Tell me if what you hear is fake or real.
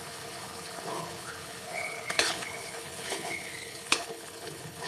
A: fake